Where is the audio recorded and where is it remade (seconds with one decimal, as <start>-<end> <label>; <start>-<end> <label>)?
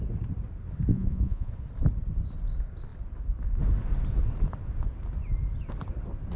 0.0-0.9 recorded; 0.9-1.5 remade; 1.5-6.4 recorded